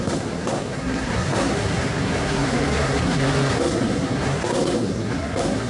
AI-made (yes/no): yes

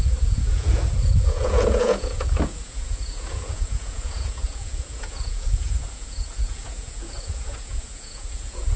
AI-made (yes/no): yes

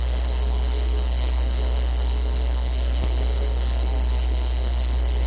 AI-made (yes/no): yes